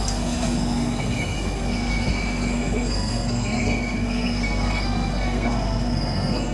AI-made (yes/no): yes